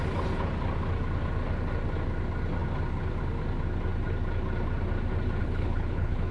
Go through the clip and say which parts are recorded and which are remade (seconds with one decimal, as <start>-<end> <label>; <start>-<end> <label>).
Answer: 0.0-5.4 recorded; 5.4-6.3 remade